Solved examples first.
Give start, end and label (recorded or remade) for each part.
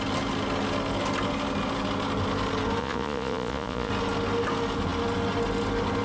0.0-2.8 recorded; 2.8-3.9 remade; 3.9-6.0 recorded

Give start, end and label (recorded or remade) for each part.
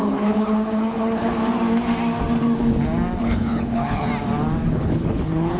0.0-1.4 remade; 1.4-3.2 recorded; 3.2-4.1 remade; 4.1-4.7 recorded; 4.7-5.6 remade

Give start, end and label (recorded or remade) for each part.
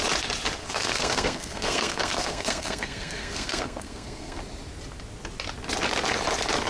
0.0-0.6 recorded; 0.6-4.4 remade; 4.4-6.7 recorded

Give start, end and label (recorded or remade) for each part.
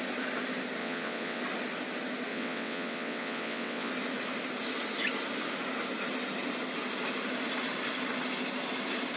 0.0-0.8 recorded; 0.8-1.4 remade; 1.4-2.3 recorded; 2.3-3.9 remade; 3.9-9.2 recorded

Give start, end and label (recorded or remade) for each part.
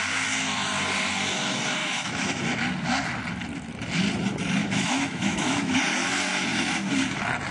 0.0-1.8 recorded; 1.8-2.4 remade; 2.4-4.6 recorded; 4.6-5.8 remade; 5.8-7.5 recorded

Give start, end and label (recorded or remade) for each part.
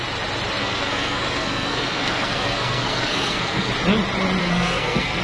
0.0-0.6 recorded; 0.6-3.7 remade; 3.7-4.4 recorded; 4.4-5.2 remade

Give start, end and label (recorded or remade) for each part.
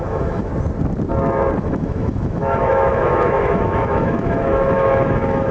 0.0-0.5 remade; 0.5-1.6 recorded; 1.6-5.5 remade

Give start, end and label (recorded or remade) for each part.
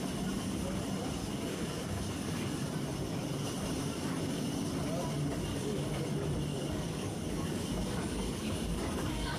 0.0-1.2 recorded; 1.2-2.5 remade; 2.5-3.8 recorded; 3.8-4.5 remade; 4.5-5.5 recorded; 5.5-6.0 remade; 6.0-6.5 recorded; 6.5-9.4 remade